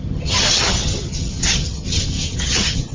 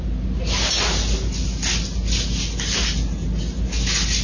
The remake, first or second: first